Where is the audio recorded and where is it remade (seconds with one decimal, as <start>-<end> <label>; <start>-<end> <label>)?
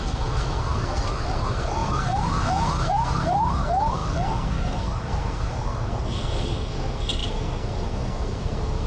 0.0-8.9 remade